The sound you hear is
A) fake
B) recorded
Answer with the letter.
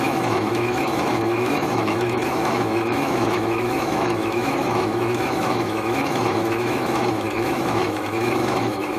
A